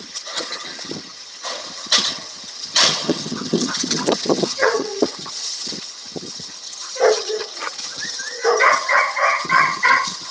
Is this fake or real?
fake